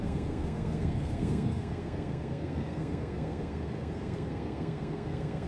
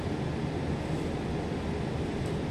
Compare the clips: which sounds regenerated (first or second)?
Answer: first